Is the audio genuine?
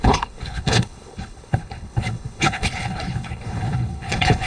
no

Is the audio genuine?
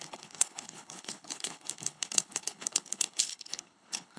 no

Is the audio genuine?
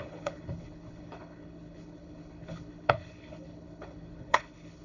no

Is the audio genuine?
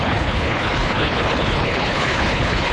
no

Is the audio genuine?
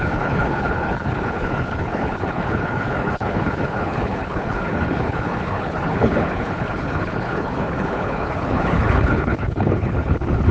no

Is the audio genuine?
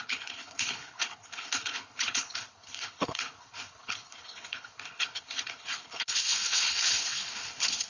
no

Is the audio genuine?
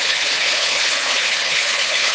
no